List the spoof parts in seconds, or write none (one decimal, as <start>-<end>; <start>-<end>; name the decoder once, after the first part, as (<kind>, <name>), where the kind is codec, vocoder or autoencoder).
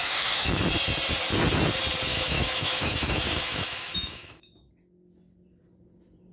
0.0-0.6 (autoencoder, DAC-VAE); 2.1-4.7